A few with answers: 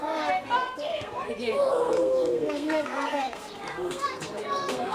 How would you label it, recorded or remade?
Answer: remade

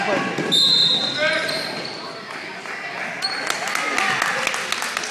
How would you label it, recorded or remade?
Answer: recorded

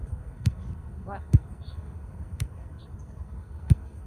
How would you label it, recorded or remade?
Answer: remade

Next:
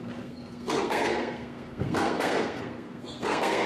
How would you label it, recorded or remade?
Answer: remade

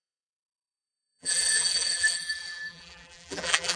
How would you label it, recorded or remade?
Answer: remade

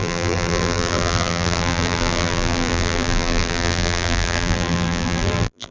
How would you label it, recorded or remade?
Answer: remade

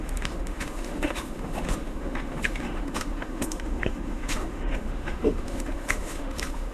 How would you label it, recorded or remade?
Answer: remade